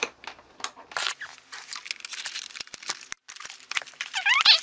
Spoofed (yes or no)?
no